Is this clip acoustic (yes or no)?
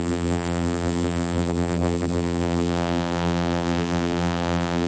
no